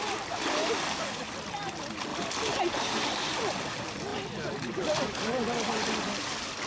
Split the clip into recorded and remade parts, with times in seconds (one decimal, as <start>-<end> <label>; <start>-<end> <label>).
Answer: 0.0-6.7 recorded